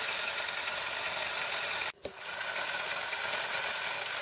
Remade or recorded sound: recorded